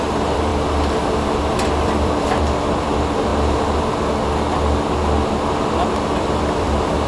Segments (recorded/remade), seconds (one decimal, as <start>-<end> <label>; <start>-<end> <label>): 0.0-0.5 remade; 0.5-1.8 recorded; 1.8-3.3 remade; 3.3-6.2 recorded; 6.2-7.1 remade